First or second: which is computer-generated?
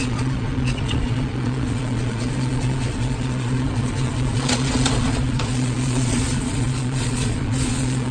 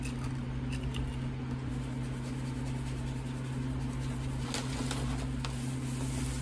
first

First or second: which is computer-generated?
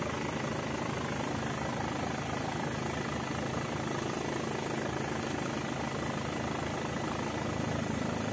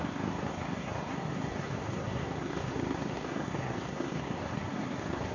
second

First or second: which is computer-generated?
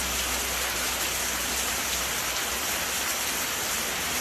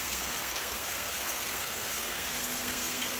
second